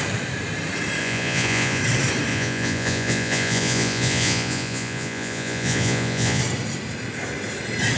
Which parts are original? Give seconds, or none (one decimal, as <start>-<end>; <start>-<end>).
0.0-1.0; 1.8-2.3; 6.4-8.0